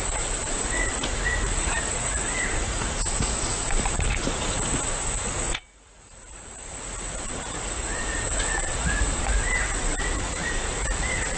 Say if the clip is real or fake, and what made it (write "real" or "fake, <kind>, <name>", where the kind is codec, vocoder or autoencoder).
fake, vocoder, Vocos